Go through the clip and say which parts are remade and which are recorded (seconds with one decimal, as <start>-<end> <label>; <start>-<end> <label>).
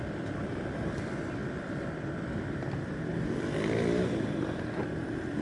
0.0-5.4 recorded